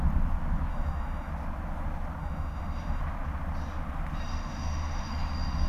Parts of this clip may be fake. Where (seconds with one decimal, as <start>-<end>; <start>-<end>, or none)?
0.7-1.3; 2.2-3.0; 4.3-5.1